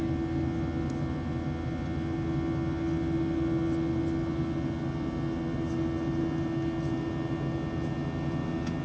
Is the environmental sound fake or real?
real